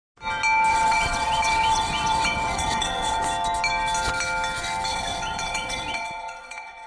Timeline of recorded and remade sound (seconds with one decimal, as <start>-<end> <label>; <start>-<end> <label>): 0.0-0.7 recorded; 0.7-3.2 remade; 3.2-4.9 recorded; 4.9-6.9 remade